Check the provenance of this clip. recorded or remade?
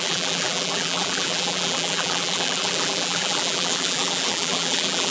remade